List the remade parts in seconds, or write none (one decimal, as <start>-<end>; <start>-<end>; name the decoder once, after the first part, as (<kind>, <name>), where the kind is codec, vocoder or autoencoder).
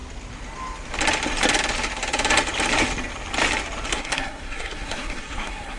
3.9-5.8 (codec, SNAC)